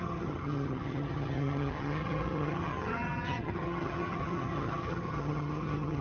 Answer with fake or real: fake